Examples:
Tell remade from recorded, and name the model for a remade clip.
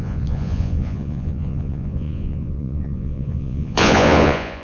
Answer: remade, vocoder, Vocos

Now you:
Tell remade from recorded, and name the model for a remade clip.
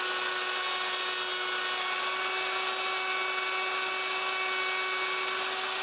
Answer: recorded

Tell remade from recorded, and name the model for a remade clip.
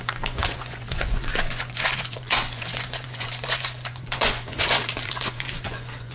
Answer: remade, vocoder, Vocos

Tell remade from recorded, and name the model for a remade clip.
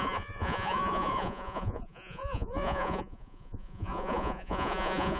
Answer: remade, vocoder, Vocos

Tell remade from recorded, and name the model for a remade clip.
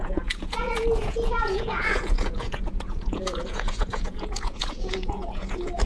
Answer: remade, vocoder, Vocos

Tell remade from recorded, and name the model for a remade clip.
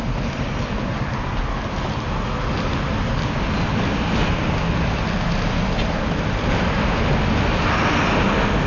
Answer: recorded